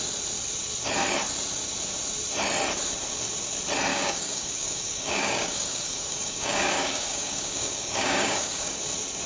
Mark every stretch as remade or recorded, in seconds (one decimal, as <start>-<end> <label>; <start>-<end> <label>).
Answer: 0.0-3.9 recorded; 3.9-8.8 remade; 8.8-9.3 recorded